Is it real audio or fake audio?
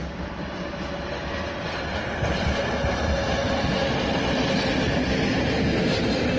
real